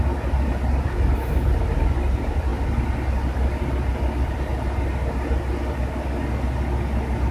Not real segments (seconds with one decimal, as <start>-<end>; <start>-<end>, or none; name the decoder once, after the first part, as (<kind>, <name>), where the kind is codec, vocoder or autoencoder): 2.5-4.5 (vocoder, BigVGAN v2)

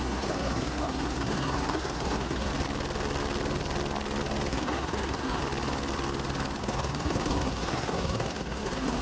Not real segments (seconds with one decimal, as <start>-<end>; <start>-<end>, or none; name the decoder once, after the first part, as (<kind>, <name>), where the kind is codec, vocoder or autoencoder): 0.0-2.5 (codec, SNAC); 4.5-5.4; 6.6-9.0